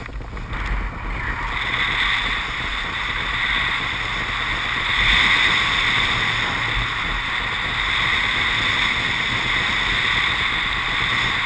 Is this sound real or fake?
real